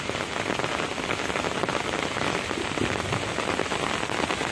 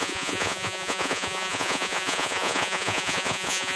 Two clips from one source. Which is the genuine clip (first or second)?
first